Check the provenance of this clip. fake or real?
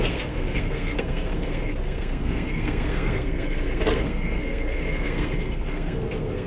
fake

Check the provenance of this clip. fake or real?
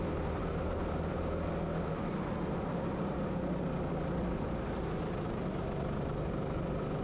real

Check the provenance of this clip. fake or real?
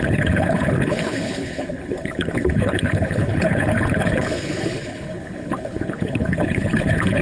fake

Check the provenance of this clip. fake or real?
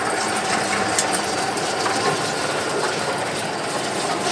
real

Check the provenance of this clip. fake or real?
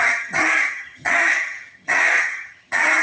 fake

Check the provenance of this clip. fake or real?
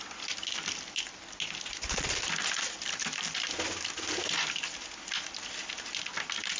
real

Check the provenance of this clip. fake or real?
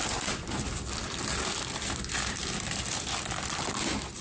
fake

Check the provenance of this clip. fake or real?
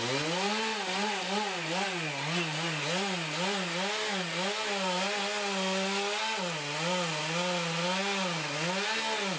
real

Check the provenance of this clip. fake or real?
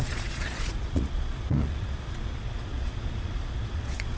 fake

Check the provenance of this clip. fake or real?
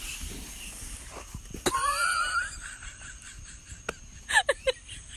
fake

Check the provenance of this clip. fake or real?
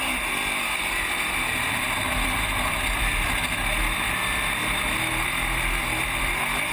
fake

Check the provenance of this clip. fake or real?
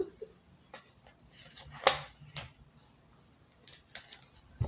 real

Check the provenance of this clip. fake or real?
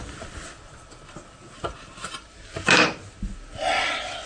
real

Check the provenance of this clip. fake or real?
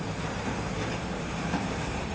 fake